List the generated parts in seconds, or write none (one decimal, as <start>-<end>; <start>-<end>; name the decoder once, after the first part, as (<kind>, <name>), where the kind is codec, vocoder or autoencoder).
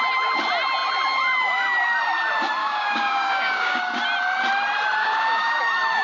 2.6-3.8 (codec, DAC); 5.0-5.6